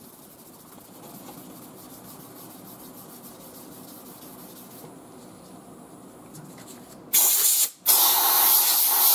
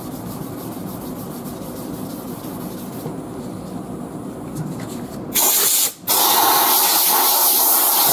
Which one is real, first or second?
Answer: first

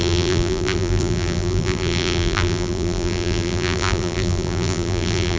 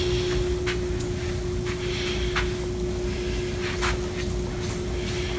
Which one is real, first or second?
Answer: second